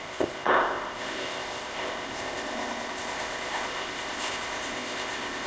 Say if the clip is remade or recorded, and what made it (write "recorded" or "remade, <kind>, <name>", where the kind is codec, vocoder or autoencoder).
remade, codec, ZipCodec